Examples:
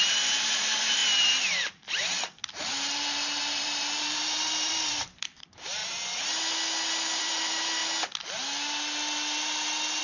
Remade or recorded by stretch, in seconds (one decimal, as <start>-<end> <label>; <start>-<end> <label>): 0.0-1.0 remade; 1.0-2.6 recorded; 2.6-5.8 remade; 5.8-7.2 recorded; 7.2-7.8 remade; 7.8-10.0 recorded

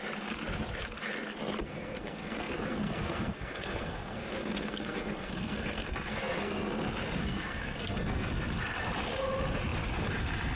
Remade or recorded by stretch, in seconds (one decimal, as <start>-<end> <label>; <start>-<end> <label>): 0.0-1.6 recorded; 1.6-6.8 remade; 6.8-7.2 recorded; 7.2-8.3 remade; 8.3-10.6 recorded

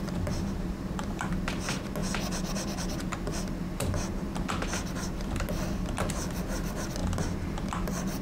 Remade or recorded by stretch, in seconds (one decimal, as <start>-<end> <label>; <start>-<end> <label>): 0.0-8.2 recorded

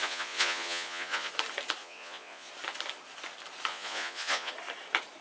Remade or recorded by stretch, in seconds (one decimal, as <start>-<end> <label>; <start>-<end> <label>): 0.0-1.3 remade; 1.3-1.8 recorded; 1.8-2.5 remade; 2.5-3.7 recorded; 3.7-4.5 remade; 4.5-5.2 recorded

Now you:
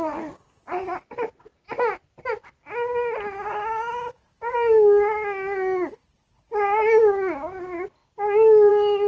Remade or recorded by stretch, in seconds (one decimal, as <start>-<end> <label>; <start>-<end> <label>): 0.0-9.1 recorded